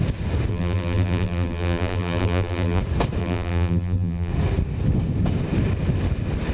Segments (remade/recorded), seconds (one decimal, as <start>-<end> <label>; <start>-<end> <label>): 0.0-0.5 recorded; 0.5-2.8 remade; 2.8-3.2 recorded; 3.2-4.3 remade; 4.3-6.5 recorded

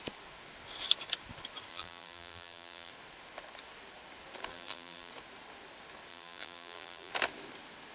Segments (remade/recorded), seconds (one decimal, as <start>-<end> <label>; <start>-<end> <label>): 0.0-1.7 recorded; 1.7-2.9 remade; 2.9-4.5 recorded; 4.5-5.1 remade; 5.1-6.1 recorded; 6.1-7.1 remade; 7.1-7.9 recorded

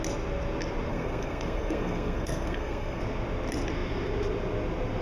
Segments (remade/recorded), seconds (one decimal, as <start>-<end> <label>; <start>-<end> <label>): 0.0-0.9 recorded; 0.9-3.0 remade; 3.0-5.0 recorded

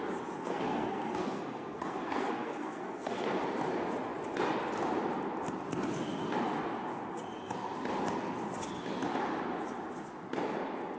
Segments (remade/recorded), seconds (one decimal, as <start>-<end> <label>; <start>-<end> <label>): 0.0-0.4 recorded; 0.4-3.4 remade; 3.4-11.0 recorded

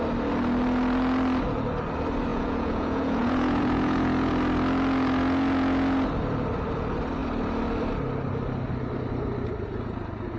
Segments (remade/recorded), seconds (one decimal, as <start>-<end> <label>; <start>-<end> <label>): 0.0-2.3 recorded; 2.3-4.3 remade; 4.3-10.4 recorded

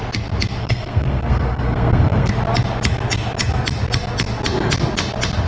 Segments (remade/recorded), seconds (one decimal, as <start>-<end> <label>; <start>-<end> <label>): 0.0-0.6 recorded; 0.6-2.3 remade; 2.3-5.5 recorded